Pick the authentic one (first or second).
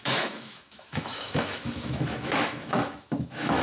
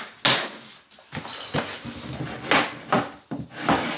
second